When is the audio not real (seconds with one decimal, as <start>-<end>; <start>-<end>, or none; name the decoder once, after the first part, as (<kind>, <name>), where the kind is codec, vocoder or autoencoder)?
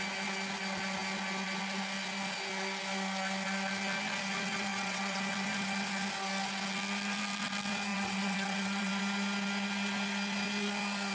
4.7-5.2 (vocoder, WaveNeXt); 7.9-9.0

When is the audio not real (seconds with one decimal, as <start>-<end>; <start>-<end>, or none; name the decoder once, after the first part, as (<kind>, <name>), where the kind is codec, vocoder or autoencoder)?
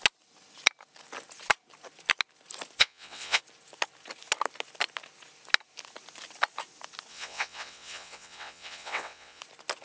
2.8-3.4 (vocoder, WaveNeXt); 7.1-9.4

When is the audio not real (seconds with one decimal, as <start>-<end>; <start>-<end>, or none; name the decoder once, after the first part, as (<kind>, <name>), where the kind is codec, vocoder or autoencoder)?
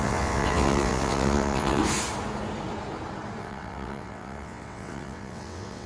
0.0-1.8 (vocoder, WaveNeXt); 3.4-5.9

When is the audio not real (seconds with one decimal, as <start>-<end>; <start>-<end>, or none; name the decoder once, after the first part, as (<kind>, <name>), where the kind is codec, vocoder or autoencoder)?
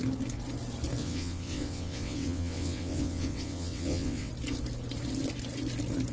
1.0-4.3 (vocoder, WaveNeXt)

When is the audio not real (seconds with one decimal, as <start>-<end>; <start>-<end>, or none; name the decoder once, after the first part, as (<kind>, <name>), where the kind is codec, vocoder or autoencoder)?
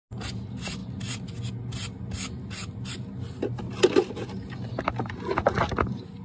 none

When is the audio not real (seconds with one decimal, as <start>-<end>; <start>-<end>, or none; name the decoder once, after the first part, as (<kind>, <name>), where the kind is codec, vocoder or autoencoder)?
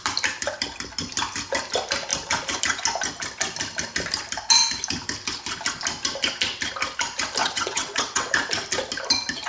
7.4-8.3 (vocoder, WaveNeXt)